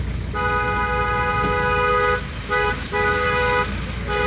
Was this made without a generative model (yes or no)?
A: yes